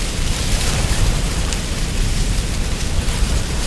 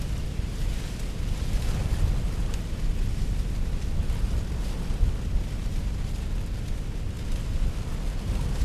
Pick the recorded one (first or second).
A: second